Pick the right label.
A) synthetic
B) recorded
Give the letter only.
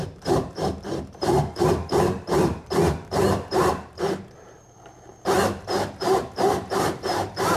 A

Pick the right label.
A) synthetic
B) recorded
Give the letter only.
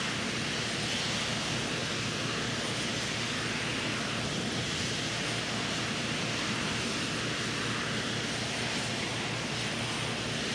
B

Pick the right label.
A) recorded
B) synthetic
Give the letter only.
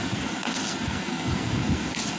B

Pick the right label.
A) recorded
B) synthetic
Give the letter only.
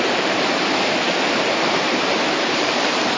B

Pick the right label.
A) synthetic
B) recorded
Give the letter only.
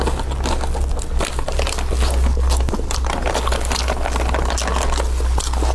B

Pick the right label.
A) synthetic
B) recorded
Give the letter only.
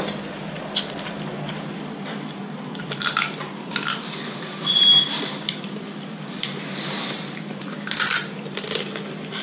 A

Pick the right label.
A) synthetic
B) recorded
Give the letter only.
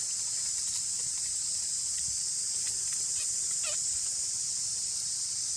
B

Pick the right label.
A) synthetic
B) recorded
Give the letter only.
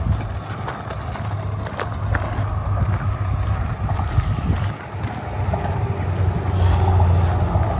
B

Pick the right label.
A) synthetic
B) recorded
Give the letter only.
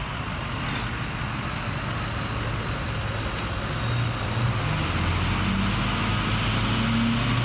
B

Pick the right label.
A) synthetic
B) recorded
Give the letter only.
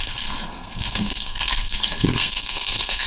A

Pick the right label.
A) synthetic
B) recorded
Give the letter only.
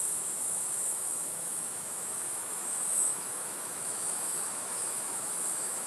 A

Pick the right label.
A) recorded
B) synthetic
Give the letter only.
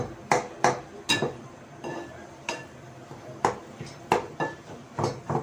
A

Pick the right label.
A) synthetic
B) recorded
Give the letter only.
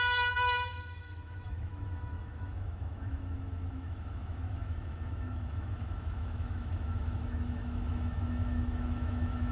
A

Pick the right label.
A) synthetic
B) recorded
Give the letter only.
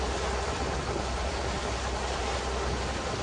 B